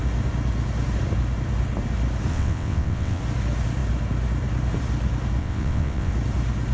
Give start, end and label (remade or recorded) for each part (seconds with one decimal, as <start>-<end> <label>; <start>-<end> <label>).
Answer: 0.0-2.3 recorded; 2.3-3.2 remade; 3.2-5.4 recorded; 5.4-6.1 remade; 6.1-6.7 recorded